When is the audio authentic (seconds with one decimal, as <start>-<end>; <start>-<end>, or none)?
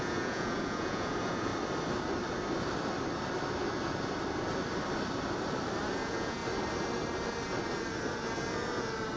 1.5-5.9; 6.4-9.2